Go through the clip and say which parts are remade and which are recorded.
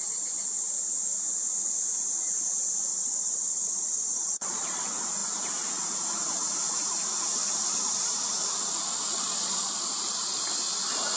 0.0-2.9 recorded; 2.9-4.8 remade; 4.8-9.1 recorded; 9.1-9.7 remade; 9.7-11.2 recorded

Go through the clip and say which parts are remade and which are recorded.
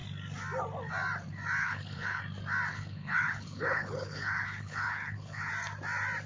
0.0-1.6 recorded; 1.6-2.2 remade; 2.2-2.7 recorded; 2.7-5.5 remade; 5.5-6.3 recorded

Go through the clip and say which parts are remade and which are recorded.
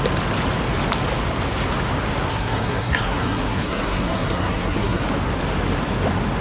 0.0-2.3 recorded; 2.3-5.0 remade; 5.0-6.4 recorded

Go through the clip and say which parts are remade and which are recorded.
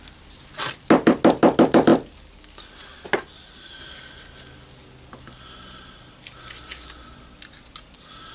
0.0-8.3 recorded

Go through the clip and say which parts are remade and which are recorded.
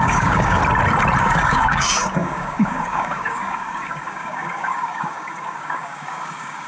0.0-0.6 remade; 0.6-1.2 recorded; 1.2-6.7 remade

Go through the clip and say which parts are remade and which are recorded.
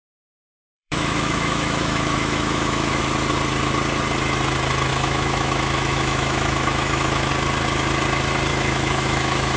0.0-0.6 recorded; 0.6-3.0 remade; 3.0-4.9 recorded; 4.9-7.3 remade; 7.3-8.5 recorded; 8.5-9.6 remade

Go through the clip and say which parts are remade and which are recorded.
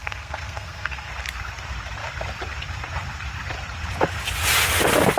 0.0-1.1 remade; 1.1-5.2 recorded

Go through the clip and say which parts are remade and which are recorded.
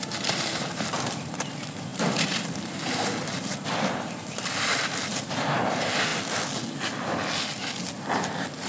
0.0-6.1 remade; 6.1-8.7 recorded